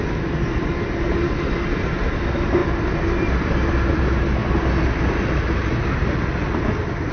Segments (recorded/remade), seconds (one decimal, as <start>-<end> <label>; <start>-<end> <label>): 0.0-2.6 recorded; 2.6-4.0 remade; 4.0-4.4 recorded; 4.4-5.3 remade; 5.3-7.1 recorded